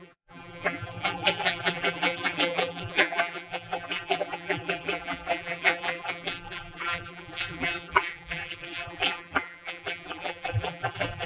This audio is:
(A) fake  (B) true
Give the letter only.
A